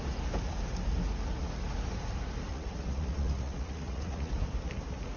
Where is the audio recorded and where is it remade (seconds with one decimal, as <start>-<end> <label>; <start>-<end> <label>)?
0.0-2.5 recorded; 2.5-4.3 remade; 4.3-5.2 recorded